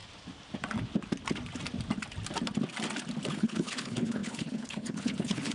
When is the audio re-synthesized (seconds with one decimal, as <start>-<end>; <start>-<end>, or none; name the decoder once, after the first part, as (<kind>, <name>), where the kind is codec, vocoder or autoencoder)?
3.3-5.5 (codec, HILCodec)